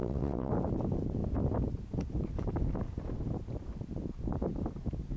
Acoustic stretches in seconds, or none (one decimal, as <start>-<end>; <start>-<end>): 0.5-5.2